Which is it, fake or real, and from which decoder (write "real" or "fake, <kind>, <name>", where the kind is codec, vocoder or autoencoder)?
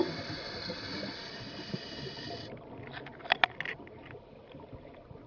real